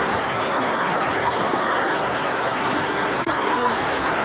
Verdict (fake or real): fake